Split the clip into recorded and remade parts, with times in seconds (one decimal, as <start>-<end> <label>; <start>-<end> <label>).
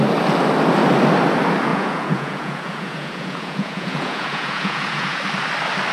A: 0.0-1.7 recorded; 1.7-5.2 remade; 5.2-5.9 recorded